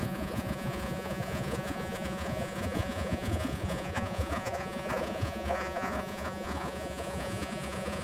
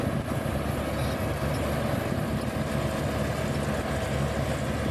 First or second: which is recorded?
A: second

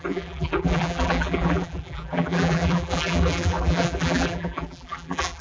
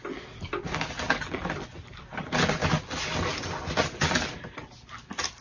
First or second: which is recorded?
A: second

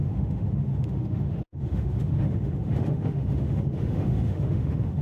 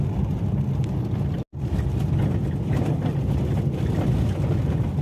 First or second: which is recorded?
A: second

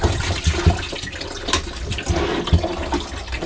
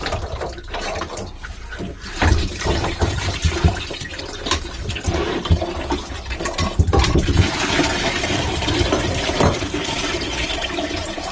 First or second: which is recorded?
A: first